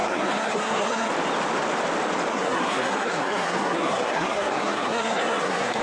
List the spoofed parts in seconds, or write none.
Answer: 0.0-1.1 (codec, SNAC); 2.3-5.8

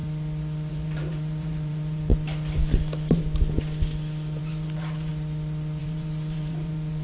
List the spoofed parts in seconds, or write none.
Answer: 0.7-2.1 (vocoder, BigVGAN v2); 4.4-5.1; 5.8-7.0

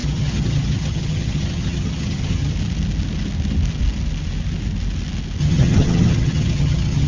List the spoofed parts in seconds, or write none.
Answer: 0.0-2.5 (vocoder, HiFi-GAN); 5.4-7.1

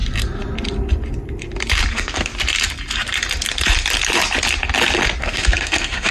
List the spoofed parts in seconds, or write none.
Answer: 1.9-2.3 (codec, SNAC); 5.2-6.1

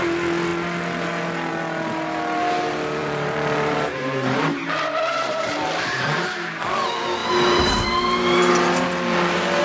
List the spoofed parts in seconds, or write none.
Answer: 3.0-5.5 (vocoder, BigVGAN v2); 7.2-8.5

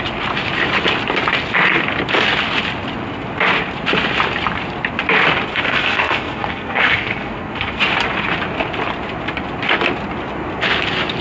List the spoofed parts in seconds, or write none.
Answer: 5.5-7.8 (codec, SNAC)